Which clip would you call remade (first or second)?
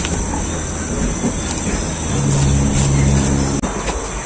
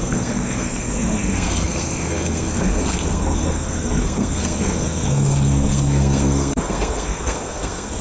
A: second